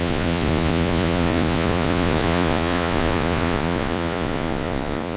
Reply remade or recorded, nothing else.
remade